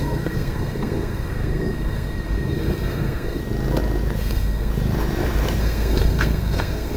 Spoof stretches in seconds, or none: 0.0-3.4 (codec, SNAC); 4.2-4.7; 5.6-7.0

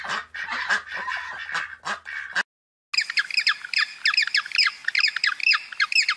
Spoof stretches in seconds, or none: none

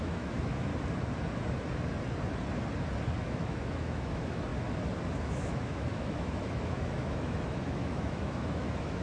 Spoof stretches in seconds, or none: 0.0-0.7 (autoencoder, DAC-VAE); 3.2-4.5; 5.1-9.0